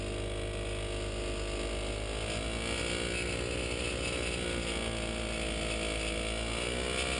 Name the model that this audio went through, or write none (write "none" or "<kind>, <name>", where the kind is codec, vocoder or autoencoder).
none